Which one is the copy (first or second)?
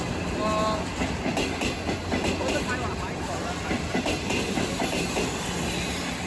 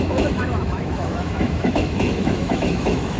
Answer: second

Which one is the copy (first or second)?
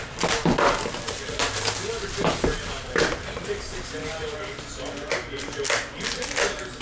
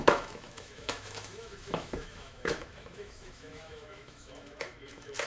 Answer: second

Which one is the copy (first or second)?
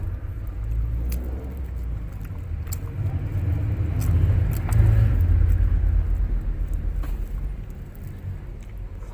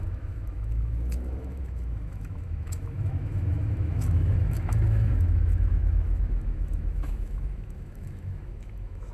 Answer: second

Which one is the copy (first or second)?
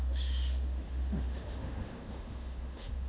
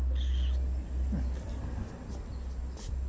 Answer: first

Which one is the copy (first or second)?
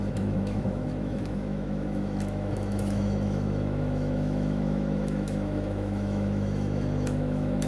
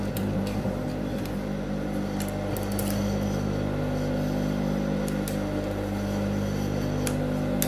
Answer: first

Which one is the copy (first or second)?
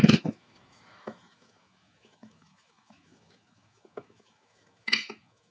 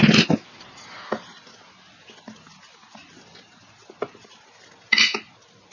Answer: first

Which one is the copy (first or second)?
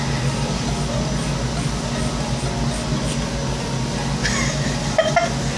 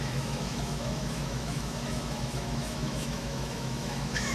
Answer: second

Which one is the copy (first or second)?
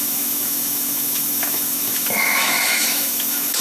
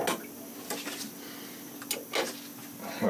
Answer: first